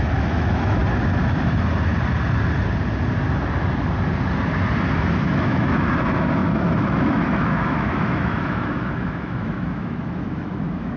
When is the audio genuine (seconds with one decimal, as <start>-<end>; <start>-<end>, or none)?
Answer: 0.8-5.3